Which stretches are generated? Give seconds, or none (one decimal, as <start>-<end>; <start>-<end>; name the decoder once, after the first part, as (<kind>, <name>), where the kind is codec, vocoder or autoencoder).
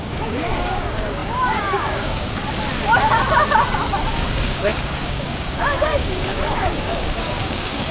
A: 0.0-2.4 (codec, DAC); 4.1-7.9